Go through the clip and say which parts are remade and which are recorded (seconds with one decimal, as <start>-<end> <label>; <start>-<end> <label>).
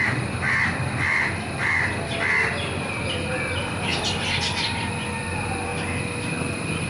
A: 0.0-5.7 recorded; 5.7-6.9 remade